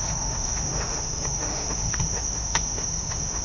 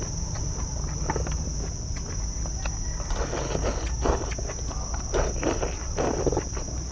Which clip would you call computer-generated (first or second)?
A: first